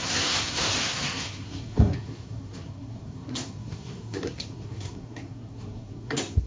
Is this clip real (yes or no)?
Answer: no